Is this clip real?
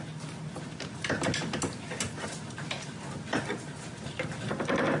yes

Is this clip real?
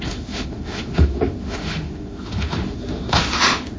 no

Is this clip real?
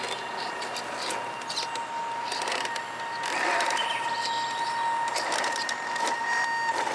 yes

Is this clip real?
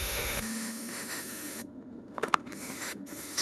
no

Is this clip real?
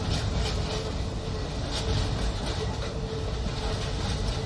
yes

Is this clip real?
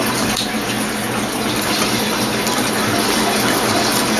yes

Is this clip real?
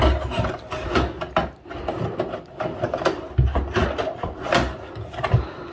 yes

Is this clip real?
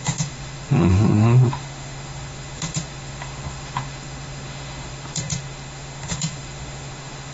no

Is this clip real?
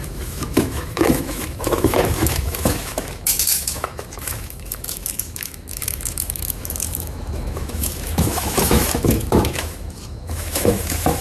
no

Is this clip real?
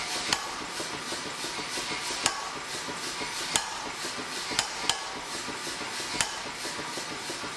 yes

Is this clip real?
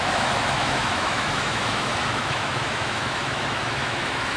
no